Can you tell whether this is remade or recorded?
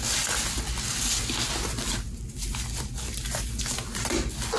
recorded